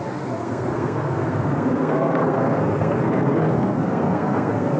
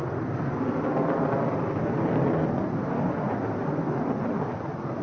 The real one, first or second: second